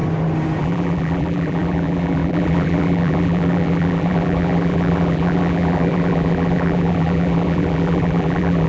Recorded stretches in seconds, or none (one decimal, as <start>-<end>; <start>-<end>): 0.0-0.6